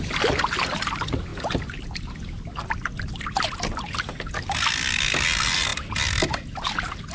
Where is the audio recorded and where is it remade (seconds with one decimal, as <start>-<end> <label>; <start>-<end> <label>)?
0.0-7.1 recorded